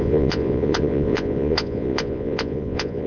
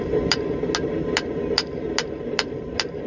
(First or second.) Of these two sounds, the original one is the second